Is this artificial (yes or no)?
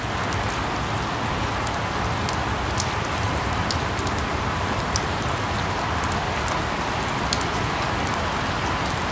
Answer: no